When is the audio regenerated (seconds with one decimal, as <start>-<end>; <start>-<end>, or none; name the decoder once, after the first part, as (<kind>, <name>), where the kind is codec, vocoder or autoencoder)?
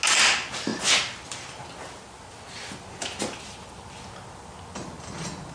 none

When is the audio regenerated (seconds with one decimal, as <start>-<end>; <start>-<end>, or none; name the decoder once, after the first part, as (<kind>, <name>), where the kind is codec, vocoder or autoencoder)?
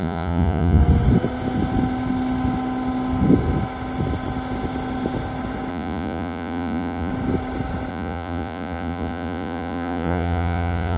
0.0-0.8 (vocoder, Vocos); 5.7-7.1; 7.9-11.0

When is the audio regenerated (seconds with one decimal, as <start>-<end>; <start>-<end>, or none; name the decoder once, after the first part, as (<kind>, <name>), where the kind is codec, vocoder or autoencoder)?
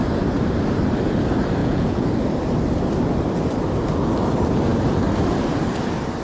1.6-2.1 (vocoder, Vocos)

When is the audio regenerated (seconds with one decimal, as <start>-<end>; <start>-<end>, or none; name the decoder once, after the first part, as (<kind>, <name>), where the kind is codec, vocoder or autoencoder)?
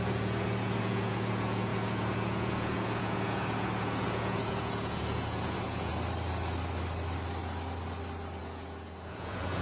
0.0-5.9 (vocoder, Vocos); 8.4-9.6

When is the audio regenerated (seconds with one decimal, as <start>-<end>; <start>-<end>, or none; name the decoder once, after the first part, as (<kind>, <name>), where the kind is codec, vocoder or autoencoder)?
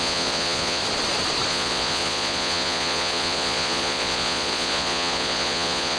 0.0-0.8 (vocoder, Vocos); 1.5-6.0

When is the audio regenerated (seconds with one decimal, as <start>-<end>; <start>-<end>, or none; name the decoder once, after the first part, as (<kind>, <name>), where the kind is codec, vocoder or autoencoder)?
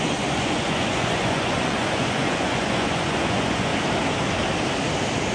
0.0-3.7 (vocoder, Vocos)